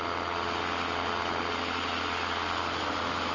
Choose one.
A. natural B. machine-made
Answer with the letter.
A